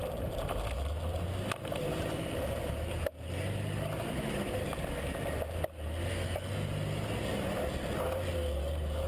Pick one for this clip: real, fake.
real